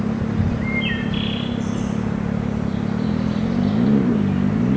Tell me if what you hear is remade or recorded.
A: recorded